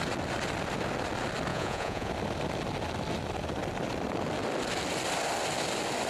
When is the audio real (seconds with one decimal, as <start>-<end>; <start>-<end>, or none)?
0.0-1.5; 2.1-6.1